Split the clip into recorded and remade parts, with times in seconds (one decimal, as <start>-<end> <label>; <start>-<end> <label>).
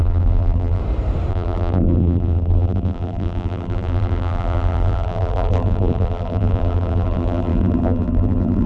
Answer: 0.0-0.8 remade; 0.8-1.3 recorded; 1.3-8.7 remade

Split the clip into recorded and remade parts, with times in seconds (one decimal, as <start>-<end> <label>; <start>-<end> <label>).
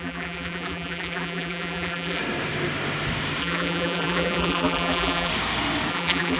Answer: 0.0-2.2 remade; 2.2-3.4 recorded; 3.4-5.3 remade; 5.3-5.9 recorded; 5.9-6.4 remade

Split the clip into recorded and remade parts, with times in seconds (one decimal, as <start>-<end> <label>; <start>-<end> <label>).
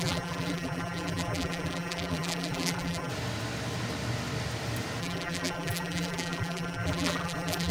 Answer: 0.0-3.1 remade; 3.1-5.0 recorded; 5.0-7.7 remade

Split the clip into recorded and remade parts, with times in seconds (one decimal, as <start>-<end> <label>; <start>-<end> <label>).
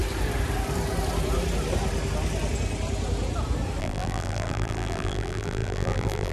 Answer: 0.0-3.8 recorded; 3.8-6.3 remade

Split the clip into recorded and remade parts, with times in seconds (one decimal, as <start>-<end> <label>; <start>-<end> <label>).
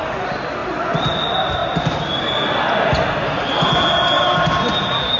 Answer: 0.0-5.2 recorded